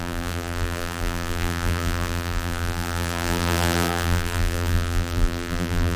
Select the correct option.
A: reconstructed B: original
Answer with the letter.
A